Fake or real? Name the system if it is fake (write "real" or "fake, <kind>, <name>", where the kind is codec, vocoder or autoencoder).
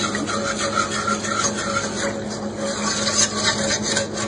real